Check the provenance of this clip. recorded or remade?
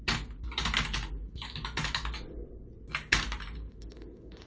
recorded